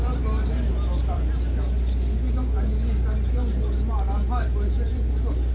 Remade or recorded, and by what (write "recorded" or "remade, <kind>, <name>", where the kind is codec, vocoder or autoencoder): remade, vocoder, BigVGAN v2